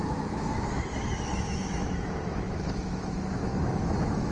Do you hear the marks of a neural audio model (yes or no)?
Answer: yes